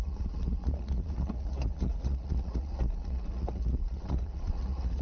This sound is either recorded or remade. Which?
remade